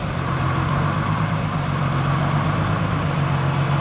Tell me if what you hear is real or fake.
real